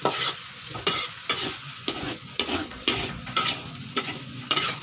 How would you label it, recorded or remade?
remade